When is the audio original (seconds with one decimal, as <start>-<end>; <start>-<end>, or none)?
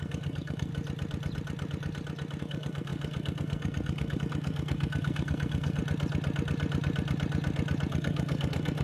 0.7-2.4; 5.8-7.9